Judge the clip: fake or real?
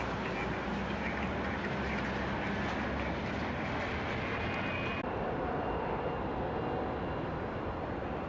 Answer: real